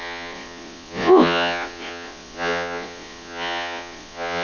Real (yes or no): no